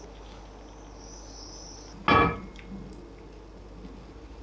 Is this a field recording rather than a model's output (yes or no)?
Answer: yes